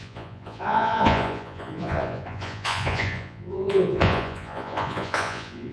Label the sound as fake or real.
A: fake